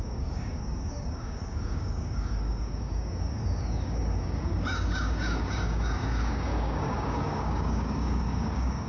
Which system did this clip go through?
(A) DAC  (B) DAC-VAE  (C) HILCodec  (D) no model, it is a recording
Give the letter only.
A